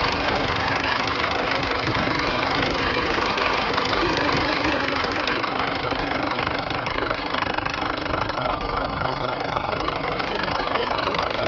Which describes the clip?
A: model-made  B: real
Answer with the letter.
A